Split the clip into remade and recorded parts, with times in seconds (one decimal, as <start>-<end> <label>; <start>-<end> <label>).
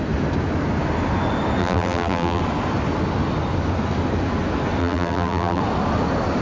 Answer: 0.0-1.6 recorded; 1.6-2.4 remade; 2.4-4.8 recorded; 4.8-5.6 remade; 5.6-6.4 recorded